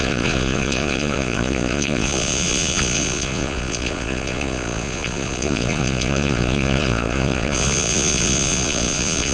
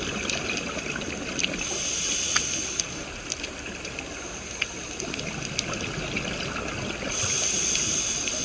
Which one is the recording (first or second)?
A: second